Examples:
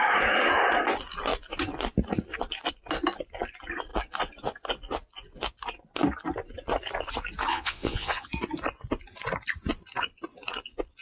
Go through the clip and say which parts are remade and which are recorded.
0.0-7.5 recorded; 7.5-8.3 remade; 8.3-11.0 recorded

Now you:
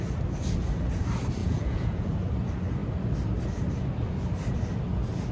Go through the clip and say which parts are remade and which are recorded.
0.0-1.4 recorded; 1.4-2.1 remade; 2.1-5.3 recorded

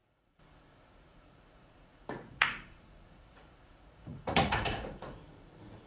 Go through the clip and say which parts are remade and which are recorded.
0.0-5.9 remade